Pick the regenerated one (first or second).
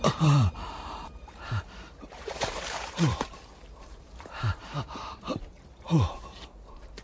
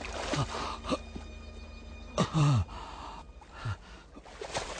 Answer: first